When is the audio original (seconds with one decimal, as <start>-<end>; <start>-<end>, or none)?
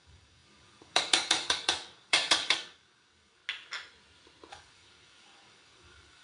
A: 3.4-4.5